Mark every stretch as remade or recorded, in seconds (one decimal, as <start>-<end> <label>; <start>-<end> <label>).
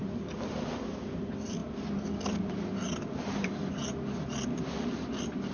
0.0-5.5 recorded